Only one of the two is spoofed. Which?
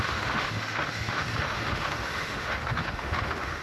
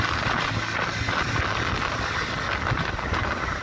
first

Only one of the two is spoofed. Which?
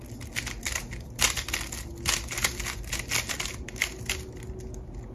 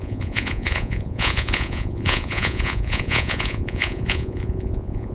second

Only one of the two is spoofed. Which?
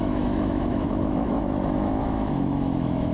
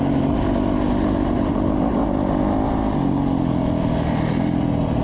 first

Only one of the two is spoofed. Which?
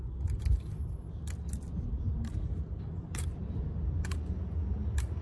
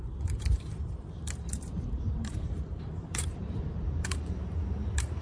second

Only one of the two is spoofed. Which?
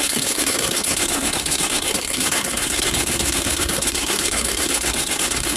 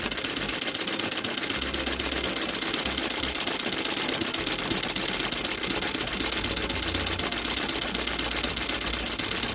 first